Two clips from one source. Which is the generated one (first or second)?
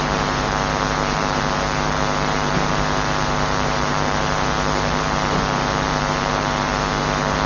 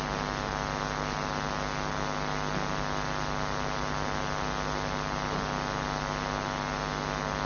first